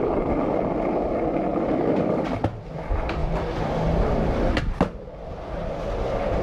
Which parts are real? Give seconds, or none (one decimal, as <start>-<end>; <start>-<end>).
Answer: 0.0-1.5; 2.7-3.2; 4.6-6.4

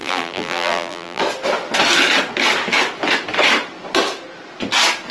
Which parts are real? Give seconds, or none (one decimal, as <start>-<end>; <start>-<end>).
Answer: 1.2-5.1

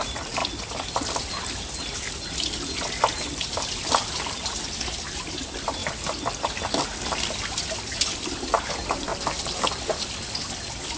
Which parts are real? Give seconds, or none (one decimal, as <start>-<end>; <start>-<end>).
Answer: 0.4-1.2

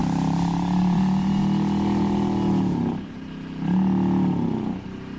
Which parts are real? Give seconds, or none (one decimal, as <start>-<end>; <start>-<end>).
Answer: 1.4-5.2